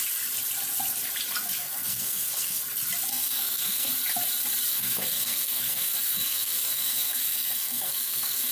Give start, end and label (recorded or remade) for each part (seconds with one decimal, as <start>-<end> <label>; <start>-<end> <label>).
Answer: 0.0-1.6 recorded; 1.6-2.6 remade; 2.6-3.1 recorded; 3.1-3.9 remade; 3.9-4.7 recorded; 4.7-8.5 remade